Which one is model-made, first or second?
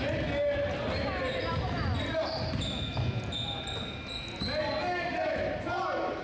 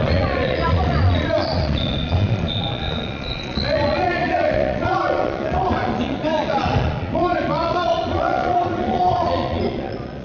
second